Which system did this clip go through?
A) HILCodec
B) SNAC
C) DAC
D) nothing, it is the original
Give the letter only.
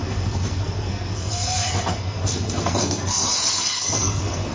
B